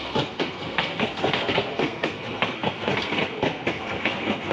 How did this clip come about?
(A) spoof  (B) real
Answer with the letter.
A